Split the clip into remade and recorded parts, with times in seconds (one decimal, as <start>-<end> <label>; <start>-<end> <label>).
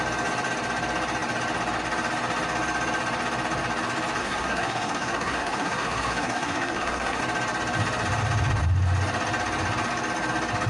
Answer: 0.0-4.2 recorded; 4.2-7.2 remade; 7.2-10.7 recorded